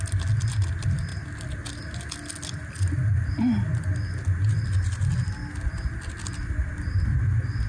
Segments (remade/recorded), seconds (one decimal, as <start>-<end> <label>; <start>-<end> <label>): 0.0-7.7 recorded